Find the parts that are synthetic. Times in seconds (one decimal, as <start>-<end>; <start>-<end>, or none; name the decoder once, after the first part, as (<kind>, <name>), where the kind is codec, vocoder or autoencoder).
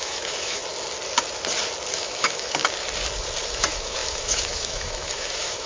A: 0.0-0.6 (autoencoder, DAC-VAE); 1.9-2.6; 3.5-5.7